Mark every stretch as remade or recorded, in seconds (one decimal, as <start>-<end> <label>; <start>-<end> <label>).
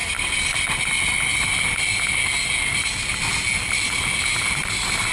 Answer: 0.0-5.1 recorded